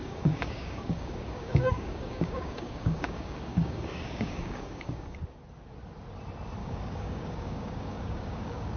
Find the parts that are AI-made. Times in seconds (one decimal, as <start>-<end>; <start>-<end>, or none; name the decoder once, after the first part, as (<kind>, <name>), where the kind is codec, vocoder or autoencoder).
0.0-5.2 (codec, DAC); 6.6-8.8

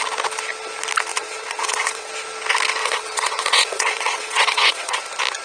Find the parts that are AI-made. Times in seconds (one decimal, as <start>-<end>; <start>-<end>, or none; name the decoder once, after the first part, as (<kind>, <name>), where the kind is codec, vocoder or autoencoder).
1.1-2.1 (vocoder, WaveNeXt); 2.8-5.0

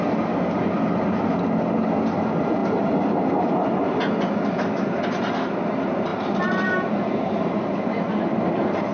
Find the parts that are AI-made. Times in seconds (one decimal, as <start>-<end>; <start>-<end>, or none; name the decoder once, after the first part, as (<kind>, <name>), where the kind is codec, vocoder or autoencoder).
none

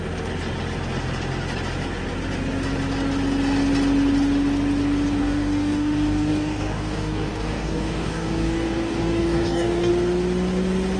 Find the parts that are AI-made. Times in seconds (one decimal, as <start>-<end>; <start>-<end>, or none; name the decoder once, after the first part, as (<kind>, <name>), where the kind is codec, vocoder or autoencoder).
5.2-9.9 (codec, DAC)

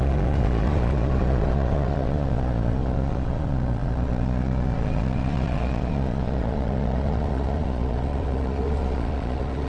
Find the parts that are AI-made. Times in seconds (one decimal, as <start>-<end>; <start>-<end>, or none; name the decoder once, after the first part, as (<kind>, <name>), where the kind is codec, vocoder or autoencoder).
0.0-9.7 (vocoder, Vocos)